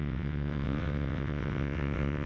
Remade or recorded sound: remade